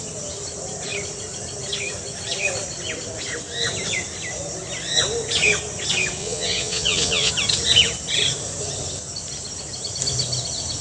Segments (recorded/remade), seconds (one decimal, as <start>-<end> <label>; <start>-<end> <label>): 0.0-6.2 recorded; 6.2-7.3 remade; 7.3-10.8 recorded